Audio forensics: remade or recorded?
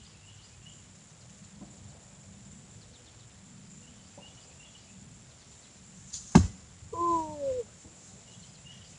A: recorded